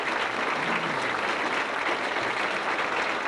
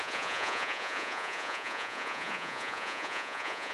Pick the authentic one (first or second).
first